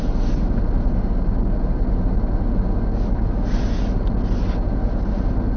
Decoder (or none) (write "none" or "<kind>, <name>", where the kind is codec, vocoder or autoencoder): none